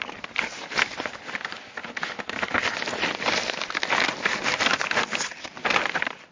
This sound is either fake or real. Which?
real